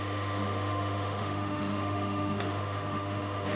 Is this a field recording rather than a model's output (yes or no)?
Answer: no